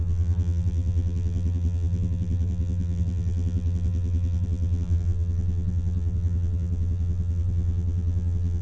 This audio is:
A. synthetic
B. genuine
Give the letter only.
A